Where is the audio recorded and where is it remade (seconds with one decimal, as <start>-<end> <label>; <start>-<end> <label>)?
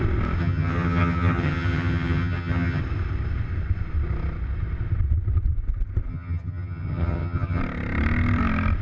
0.0-0.4 recorded; 0.4-2.8 remade; 2.8-6.1 recorded; 6.1-7.6 remade; 7.6-8.8 recorded